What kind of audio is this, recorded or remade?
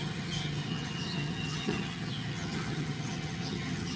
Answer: remade